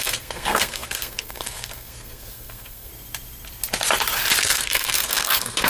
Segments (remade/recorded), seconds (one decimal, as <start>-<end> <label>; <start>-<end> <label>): 0.0-2.9 remade; 2.9-4.4 recorded; 4.4-5.7 remade